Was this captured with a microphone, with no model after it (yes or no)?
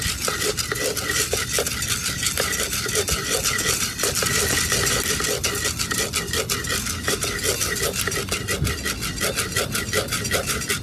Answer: yes